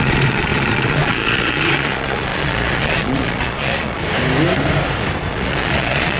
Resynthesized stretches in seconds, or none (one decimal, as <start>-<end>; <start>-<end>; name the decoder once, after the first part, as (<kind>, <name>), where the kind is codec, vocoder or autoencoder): 0.0-4.0 (vocoder, Vocos); 5.3-6.2